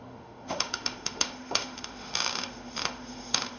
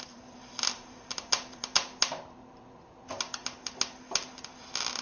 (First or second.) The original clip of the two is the second